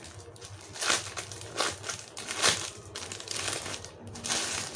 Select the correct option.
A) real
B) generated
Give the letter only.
A